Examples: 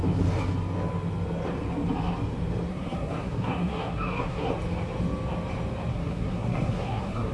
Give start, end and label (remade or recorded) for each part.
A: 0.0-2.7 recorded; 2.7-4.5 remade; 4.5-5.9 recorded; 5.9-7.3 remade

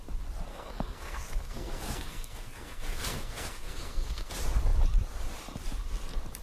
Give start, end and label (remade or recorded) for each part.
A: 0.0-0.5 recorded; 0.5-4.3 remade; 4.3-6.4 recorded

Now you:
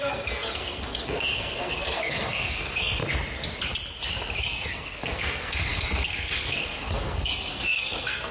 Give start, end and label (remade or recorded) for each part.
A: 0.0-3.0 remade; 3.0-4.4 recorded; 4.4-8.3 remade